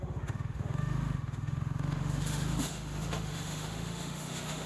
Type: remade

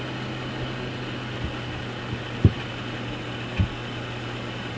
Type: recorded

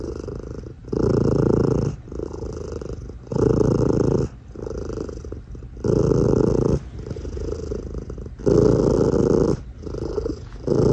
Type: recorded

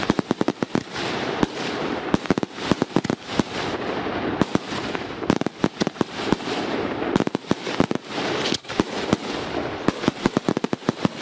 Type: recorded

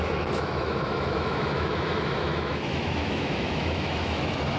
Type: remade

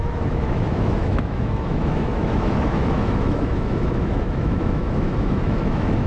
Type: remade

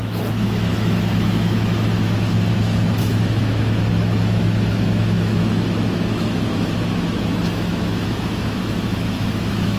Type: remade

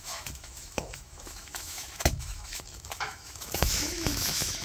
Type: remade